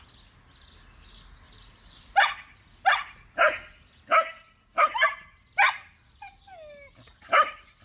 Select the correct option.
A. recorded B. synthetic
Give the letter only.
A